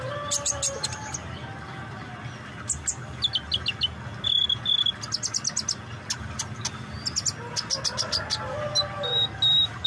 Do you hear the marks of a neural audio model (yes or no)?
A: no